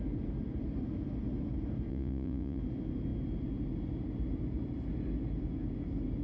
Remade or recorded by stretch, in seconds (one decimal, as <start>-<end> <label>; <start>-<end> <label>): 0.0-1.9 recorded; 1.9-2.6 remade; 2.6-6.2 recorded